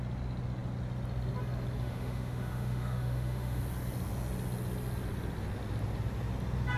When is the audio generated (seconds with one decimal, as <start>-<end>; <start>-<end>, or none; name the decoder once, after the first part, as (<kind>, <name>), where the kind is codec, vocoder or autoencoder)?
1.8-3.6 (autoencoder, DAC-VAE)